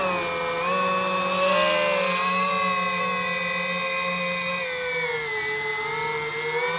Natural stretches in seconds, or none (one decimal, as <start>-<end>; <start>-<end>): 0.0-6.8